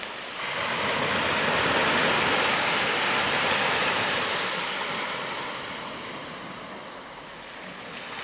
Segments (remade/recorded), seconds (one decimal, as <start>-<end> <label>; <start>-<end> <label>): 0.0-8.2 recorded

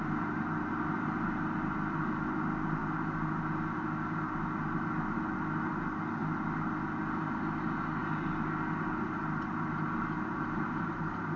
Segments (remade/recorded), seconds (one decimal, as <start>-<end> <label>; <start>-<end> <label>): 0.0-11.4 recorded

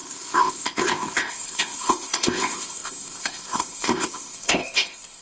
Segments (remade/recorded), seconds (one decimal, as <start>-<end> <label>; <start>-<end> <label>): 0.0-5.2 remade

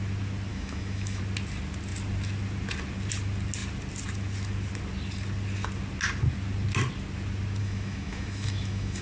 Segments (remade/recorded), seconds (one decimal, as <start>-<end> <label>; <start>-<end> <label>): 0.0-0.5 recorded; 0.5-1.2 remade; 1.2-7.6 recorded; 7.6-9.0 remade

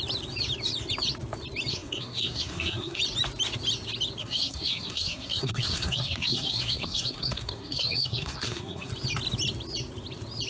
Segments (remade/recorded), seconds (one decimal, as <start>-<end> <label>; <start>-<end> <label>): 0.0-1.7 recorded; 1.7-3.0 remade; 3.0-4.2 recorded; 4.2-8.9 remade; 8.9-10.5 recorded

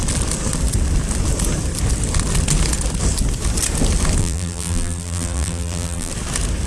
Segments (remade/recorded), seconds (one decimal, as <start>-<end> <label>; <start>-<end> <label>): 0.0-4.2 recorded; 4.2-6.1 remade; 6.1-6.7 recorded

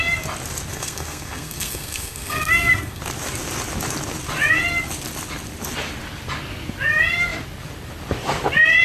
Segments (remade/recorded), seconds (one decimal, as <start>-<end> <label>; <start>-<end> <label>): 0.0-0.7 recorded; 0.7-3.0 remade; 3.0-8.8 recorded

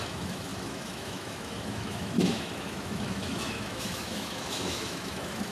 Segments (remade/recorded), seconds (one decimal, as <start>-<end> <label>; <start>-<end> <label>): 0.0-5.5 remade